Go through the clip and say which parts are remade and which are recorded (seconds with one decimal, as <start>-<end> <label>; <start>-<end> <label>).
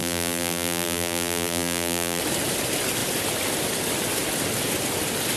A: 0.0-2.2 remade; 2.2-5.4 recorded